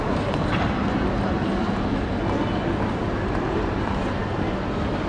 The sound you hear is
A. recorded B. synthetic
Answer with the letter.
A